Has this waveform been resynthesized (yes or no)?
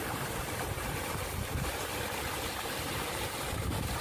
yes